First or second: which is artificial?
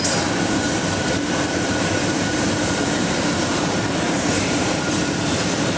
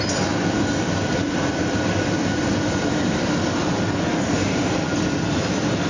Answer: first